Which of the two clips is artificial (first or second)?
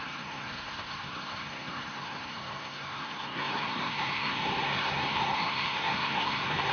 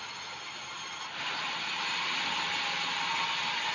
first